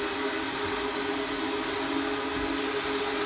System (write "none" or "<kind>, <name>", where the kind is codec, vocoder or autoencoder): none